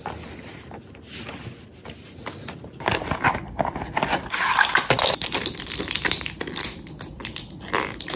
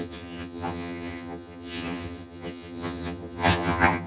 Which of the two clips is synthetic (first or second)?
second